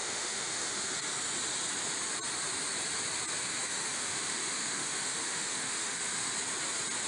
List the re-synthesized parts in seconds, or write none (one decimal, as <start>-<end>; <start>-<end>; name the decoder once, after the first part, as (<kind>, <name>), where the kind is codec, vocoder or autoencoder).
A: 0.0-1.0 (autoencoder, DAC-VAE); 3.5-6.3